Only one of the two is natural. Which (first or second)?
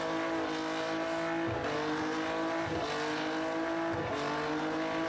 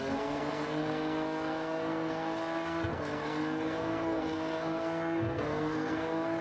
first